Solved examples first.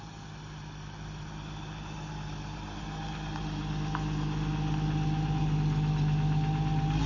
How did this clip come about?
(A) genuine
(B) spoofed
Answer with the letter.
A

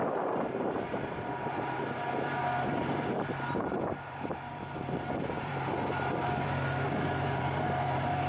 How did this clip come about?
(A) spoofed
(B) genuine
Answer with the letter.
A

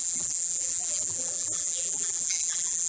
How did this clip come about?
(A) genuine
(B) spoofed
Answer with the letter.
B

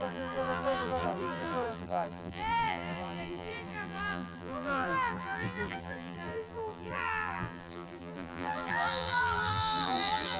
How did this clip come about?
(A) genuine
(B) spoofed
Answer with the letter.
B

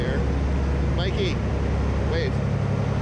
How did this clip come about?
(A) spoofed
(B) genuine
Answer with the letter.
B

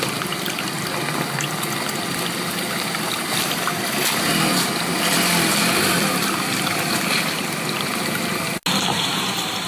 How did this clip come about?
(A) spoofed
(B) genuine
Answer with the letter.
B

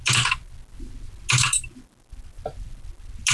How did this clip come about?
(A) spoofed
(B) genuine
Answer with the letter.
B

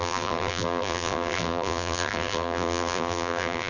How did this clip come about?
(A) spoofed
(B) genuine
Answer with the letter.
A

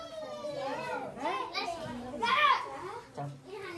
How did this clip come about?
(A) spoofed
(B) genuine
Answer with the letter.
B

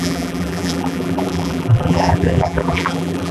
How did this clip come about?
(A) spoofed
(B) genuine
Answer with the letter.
A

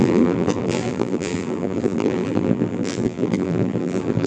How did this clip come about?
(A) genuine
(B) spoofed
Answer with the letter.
B